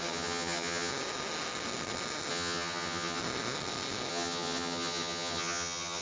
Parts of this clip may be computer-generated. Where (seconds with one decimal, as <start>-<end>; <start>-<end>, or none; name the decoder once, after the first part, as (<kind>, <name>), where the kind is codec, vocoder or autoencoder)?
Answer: 0.0-0.9 (vocoder, HiFi-GAN); 2.3-3.2; 4.1-6.0